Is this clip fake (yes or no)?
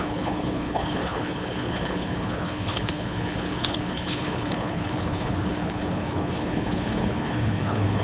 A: yes